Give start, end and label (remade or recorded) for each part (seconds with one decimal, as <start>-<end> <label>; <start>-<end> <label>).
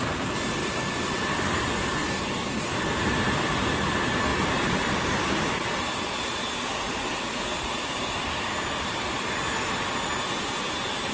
0.0-0.6 recorded; 0.6-1.6 remade; 1.6-2.0 recorded; 2.0-2.6 remade; 2.6-4.3 recorded; 4.3-4.9 remade; 4.9-7.5 recorded; 7.5-8.3 remade; 8.3-11.1 recorded